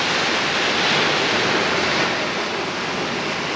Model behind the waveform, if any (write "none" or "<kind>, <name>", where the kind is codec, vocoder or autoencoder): none